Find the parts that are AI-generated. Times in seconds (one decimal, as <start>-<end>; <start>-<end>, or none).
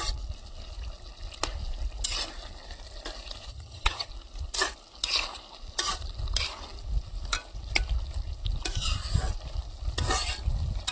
3.5-4.1